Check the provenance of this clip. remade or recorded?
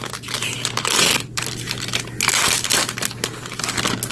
recorded